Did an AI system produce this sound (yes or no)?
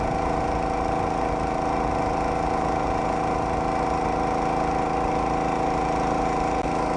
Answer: no